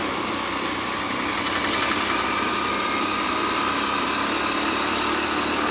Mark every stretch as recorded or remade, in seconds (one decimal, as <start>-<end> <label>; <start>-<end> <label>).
0.0-5.7 recorded